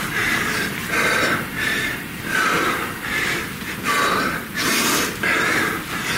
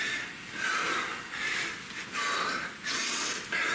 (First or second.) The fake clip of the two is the first